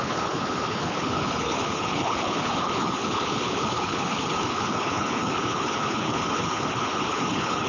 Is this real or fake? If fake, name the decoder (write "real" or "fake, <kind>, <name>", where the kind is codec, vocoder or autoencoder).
fake, codec, HILCodec